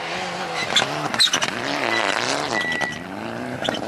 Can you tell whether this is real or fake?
real